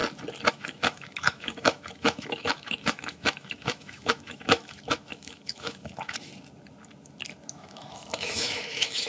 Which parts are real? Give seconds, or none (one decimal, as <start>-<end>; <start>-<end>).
0.0-0.5; 6.3-7.5

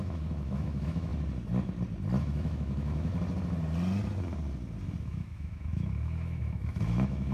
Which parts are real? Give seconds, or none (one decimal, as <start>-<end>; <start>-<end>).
1.1-2.2; 3.1-5.0

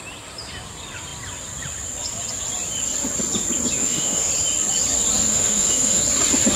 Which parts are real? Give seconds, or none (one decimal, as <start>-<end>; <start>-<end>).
0.0-3.8; 4.3-5.3; 6.0-6.6